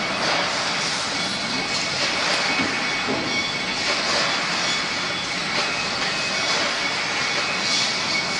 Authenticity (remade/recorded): recorded